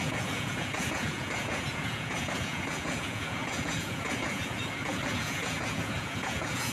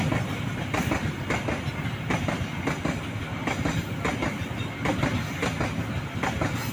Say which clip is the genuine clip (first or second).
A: second